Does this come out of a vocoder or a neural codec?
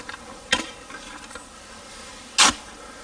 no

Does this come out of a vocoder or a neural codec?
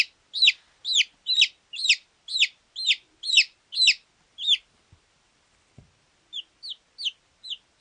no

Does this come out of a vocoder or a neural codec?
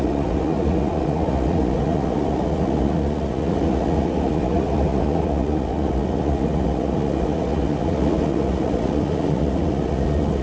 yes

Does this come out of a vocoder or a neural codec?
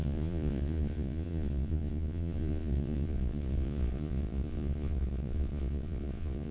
yes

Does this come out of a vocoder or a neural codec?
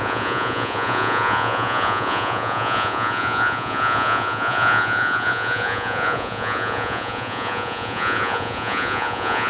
yes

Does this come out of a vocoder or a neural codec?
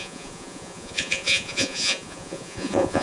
yes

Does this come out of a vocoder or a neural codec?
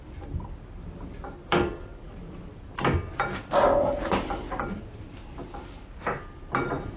no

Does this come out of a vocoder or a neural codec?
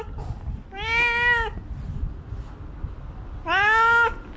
no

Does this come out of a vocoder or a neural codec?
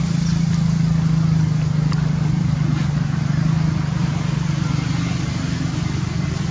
no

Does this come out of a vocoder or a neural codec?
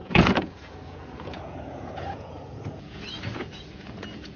yes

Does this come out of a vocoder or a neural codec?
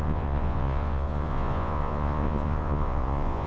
yes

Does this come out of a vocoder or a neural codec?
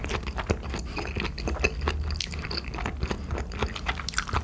no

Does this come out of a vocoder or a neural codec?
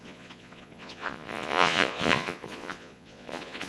yes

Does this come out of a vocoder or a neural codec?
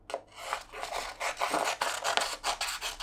no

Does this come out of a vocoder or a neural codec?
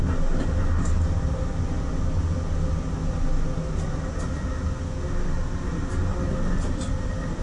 no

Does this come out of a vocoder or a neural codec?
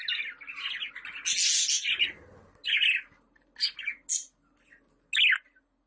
no